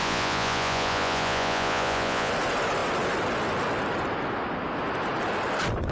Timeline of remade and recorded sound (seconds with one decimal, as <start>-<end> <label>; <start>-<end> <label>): 0.0-2.3 remade; 2.3-5.9 recorded